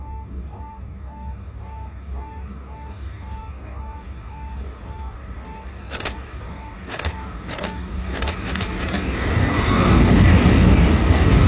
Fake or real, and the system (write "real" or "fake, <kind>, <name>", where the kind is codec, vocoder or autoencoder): fake, codec, DAC